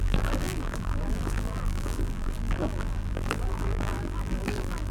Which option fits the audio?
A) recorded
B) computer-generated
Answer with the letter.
B